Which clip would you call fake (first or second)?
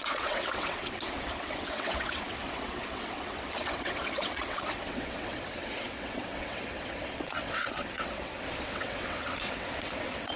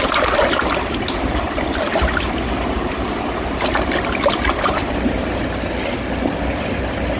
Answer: first